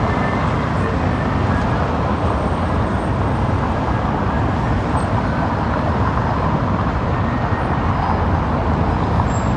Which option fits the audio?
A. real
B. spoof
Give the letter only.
A